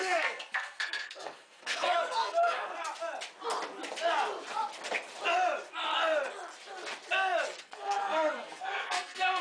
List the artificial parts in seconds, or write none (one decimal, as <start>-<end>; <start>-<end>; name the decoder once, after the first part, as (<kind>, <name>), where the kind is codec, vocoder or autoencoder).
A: 0.0-2.7 (codec, SNAC); 7.6-9.4